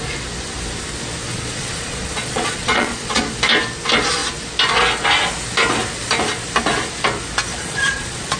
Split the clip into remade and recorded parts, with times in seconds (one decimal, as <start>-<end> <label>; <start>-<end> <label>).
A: 0.0-1.3 recorded; 1.3-3.2 remade; 3.2-7.6 recorded; 7.6-8.4 remade